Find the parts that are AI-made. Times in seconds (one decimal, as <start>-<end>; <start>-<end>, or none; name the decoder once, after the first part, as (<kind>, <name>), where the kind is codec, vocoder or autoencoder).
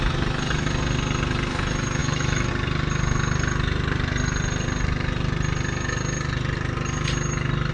2.0-2.5 (autoencoder, DAC-VAE)